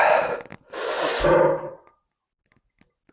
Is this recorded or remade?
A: recorded